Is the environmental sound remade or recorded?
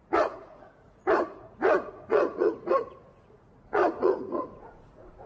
remade